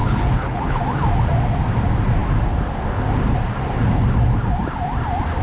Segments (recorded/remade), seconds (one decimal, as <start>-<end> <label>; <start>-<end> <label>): 0.0-0.8 remade; 0.8-5.4 recorded